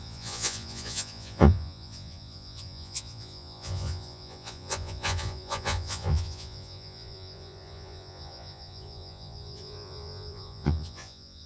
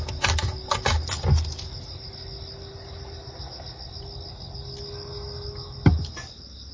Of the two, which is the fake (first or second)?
first